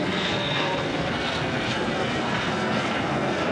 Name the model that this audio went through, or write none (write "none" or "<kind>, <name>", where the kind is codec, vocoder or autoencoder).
codec, SNAC